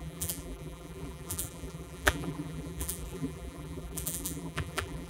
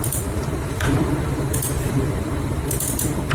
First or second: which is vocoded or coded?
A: first